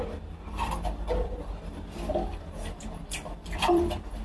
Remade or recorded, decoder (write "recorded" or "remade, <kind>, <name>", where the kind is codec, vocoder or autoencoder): remade, vocoder, BigVGAN v2